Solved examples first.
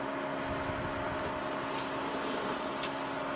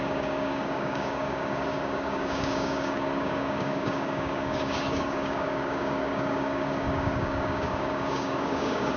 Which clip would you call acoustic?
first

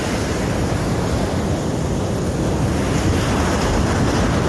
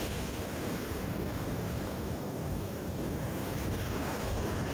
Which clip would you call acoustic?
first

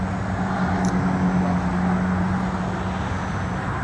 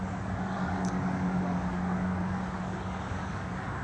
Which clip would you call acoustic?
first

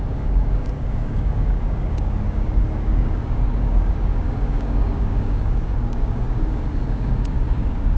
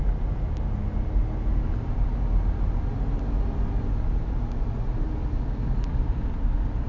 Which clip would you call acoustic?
second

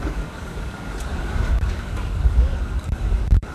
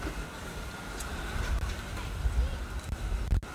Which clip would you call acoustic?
second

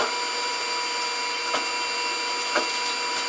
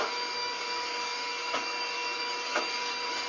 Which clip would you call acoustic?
first